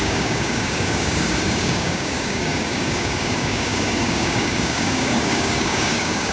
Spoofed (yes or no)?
yes